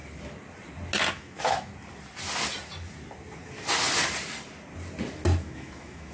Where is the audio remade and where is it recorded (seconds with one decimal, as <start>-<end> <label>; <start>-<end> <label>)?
0.0-1.1 recorded; 1.1-1.7 remade; 1.7-5.4 recorded; 5.4-6.1 remade